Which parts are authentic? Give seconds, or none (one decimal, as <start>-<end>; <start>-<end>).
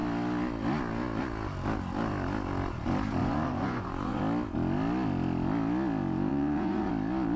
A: 0.0-3.2; 4.2-6.3; 6.9-7.4